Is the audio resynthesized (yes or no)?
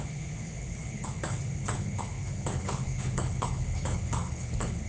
yes